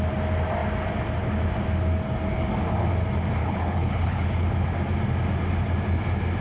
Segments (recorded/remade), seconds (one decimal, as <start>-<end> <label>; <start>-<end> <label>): 0.0-3.4 recorded; 3.4-4.5 remade; 4.5-6.4 recorded